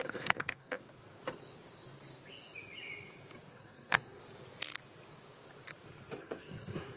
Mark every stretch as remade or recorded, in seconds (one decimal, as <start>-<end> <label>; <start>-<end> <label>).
0.0-0.8 remade; 0.8-3.5 recorded; 3.5-4.2 remade; 4.2-6.2 recorded; 6.2-7.0 remade